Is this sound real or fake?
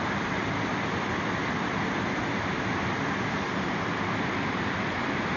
fake